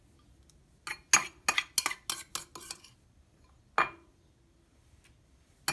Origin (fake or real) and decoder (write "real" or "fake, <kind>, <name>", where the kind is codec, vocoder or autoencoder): real